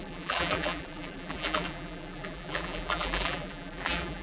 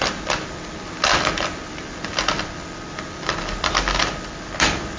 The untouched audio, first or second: second